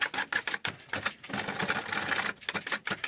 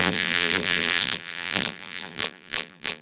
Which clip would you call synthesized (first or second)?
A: second